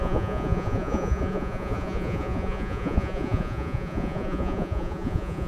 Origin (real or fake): fake